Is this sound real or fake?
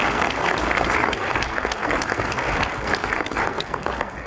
fake